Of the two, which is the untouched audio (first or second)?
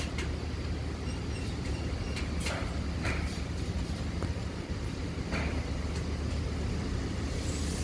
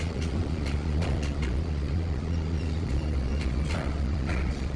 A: first